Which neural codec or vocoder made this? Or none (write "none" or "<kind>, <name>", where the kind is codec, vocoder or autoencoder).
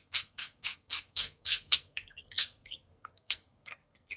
codec, SNAC